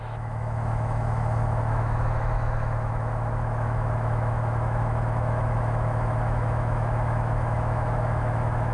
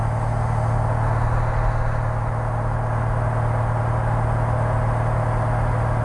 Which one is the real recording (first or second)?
second